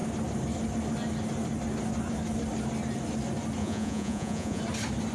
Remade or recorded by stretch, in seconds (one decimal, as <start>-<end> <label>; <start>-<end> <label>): 0.0-3.6 recorded; 3.6-4.6 remade; 4.6-5.1 recorded